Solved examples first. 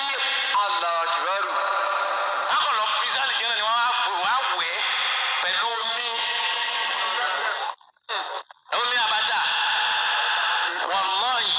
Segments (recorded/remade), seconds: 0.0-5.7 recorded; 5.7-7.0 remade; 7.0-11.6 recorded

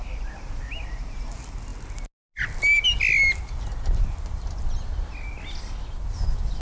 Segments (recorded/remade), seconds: 0.0-6.6 recorded